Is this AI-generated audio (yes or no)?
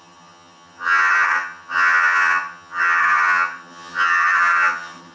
yes